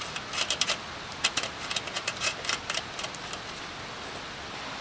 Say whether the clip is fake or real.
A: fake